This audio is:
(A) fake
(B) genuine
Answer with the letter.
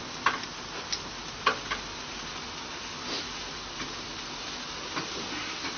B